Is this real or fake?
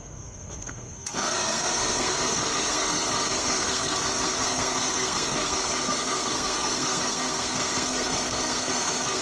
fake